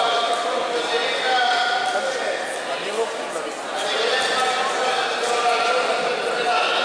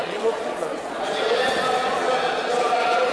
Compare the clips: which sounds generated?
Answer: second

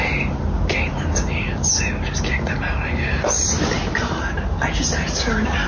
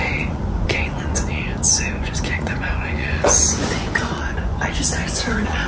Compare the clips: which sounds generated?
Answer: second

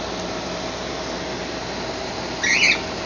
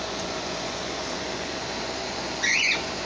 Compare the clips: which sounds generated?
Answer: second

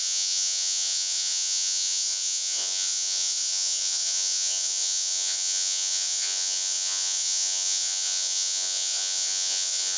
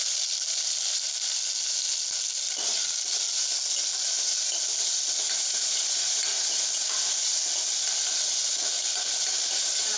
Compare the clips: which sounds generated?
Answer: first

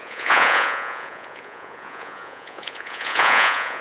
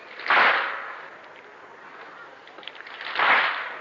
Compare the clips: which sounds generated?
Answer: first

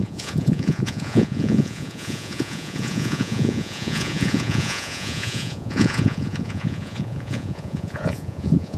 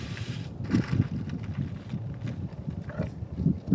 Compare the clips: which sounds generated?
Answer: first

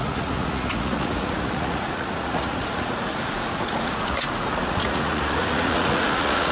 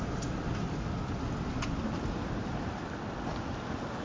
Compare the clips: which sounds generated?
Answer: first